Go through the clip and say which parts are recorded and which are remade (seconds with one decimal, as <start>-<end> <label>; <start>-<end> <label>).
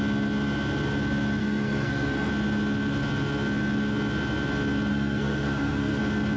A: 0.0-1.4 recorded; 1.4-2.3 remade; 2.3-4.9 recorded; 4.9-6.0 remade; 6.0-6.4 recorded